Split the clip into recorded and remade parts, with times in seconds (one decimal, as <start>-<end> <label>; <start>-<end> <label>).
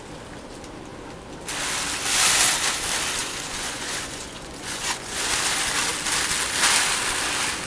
0.0-3.2 recorded; 3.2-5.3 remade; 5.3-7.7 recorded